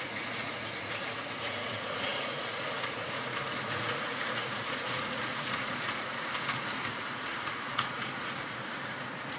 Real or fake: fake